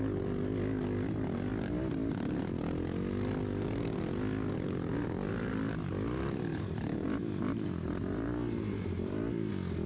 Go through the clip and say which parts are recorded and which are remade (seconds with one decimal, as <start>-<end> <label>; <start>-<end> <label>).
0.0-6.5 recorded; 6.5-9.5 remade; 9.5-9.9 recorded